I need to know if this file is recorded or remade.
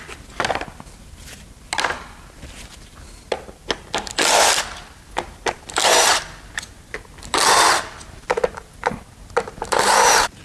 recorded